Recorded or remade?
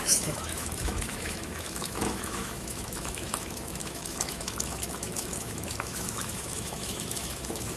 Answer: remade